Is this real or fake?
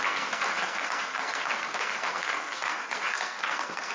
fake